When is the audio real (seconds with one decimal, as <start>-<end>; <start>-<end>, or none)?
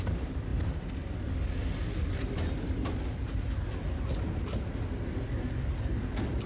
0.0-6.5